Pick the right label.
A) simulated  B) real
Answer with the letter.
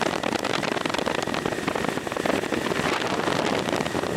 B